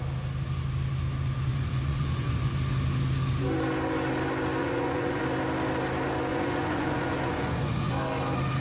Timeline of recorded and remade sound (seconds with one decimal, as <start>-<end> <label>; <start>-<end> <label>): 0.0-1.5 recorded; 1.5-2.5 remade; 2.5-4.6 recorded; 4.6-5.2 remade; 5.2-6.3 recorded; 6.3-7.9 remade; 7.9-8.6 recorded